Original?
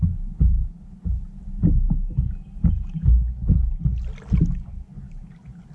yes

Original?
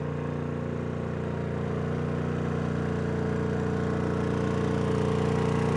yes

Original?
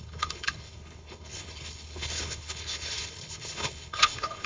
no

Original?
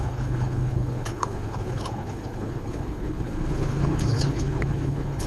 no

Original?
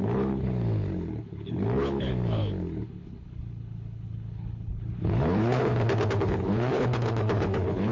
no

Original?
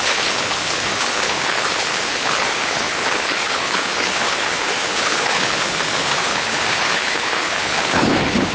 no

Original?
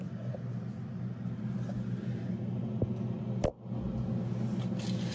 yes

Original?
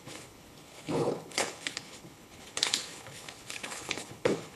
no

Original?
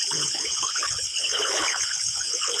no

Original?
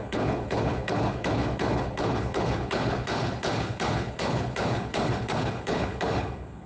no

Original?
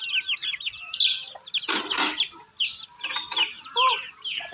yes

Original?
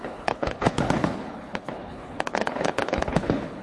no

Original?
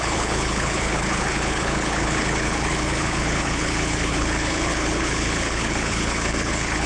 no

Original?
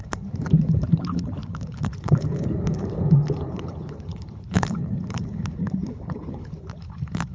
no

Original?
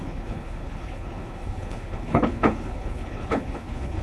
no